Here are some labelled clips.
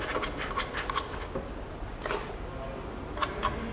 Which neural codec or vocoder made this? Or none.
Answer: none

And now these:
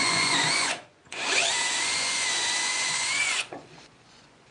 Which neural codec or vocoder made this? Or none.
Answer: vocoder, Vocos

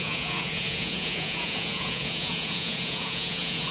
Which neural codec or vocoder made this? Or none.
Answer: vocoder, Vocos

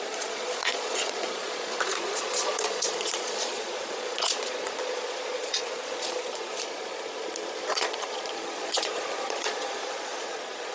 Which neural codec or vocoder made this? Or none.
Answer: vocoder, Vocos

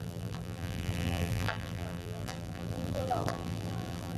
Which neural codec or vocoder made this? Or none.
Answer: vocoder, BigVGAN v2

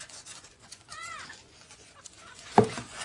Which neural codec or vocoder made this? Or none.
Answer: vocoder, Vocos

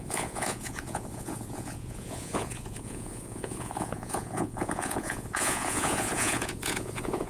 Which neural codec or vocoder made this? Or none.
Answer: vocoder, Vocos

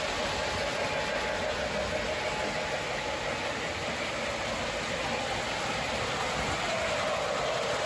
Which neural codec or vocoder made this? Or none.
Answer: none